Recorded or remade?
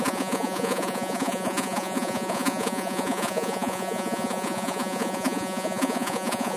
remade